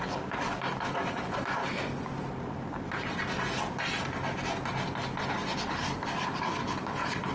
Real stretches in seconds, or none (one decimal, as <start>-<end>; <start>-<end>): 1.6-5.7

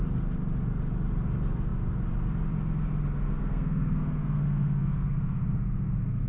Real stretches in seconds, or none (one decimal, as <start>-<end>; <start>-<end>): 0.0-3.3

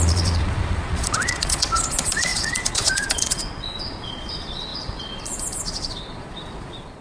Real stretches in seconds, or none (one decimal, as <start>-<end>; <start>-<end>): none

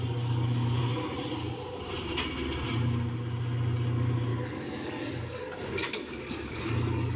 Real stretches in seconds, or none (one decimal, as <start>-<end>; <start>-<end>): 0.8-4.3

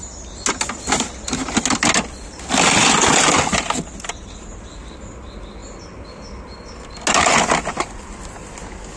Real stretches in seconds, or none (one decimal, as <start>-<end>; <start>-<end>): 0.0-9.0